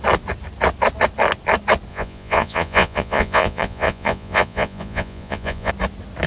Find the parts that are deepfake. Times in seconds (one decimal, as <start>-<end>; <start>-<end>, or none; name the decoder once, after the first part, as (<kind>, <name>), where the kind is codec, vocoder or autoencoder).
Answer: 1.9-5.7 (vocoder, Vocos)